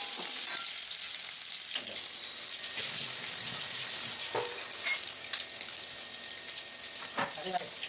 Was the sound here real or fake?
real